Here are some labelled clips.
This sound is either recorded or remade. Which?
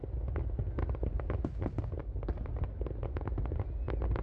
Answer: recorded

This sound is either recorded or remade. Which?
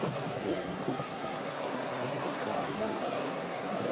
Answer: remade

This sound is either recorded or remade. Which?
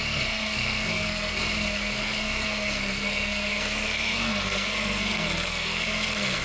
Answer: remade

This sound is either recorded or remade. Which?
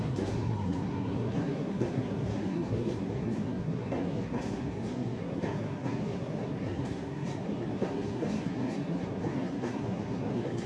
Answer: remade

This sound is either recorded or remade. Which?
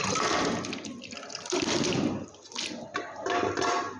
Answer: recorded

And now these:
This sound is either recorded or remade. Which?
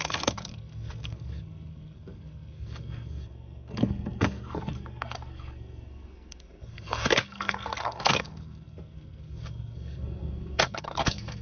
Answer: remade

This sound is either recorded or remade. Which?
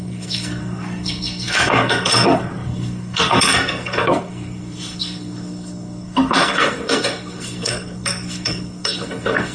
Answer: remade